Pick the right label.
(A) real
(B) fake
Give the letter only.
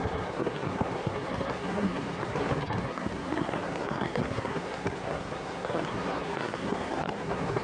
B